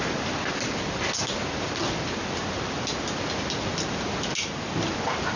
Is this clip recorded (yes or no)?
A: yes